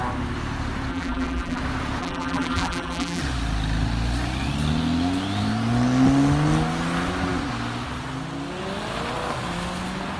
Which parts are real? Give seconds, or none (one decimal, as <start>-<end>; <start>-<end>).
0.0-0.9; 1.6-2.0; 3.2-10.2